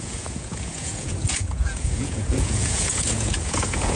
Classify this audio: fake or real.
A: fake